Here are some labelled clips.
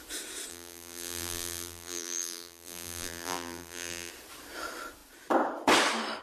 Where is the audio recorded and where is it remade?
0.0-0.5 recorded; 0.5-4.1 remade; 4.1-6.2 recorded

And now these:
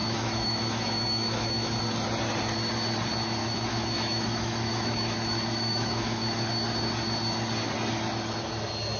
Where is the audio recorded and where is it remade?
0.0-1.8 remade; 1.8-3.4 recorded; 3.4-6.5 remade; 6.5-9.0 recorded

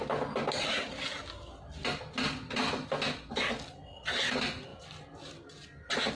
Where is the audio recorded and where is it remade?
0.0-6.1 recorded